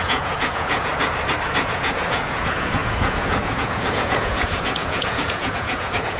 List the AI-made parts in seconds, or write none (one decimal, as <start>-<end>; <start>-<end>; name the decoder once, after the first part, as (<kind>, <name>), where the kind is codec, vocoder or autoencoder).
0.0-0.9 (vocoder, Vocos); 1.5-6.2